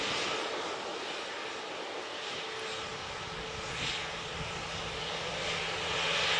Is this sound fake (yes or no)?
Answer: no